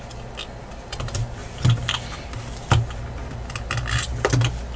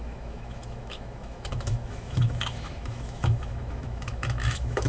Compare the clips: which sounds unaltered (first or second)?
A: first